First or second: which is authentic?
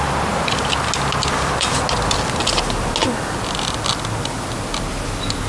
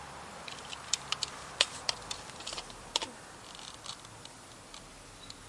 first